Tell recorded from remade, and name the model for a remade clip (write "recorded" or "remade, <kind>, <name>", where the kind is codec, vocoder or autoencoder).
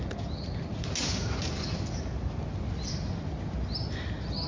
recorded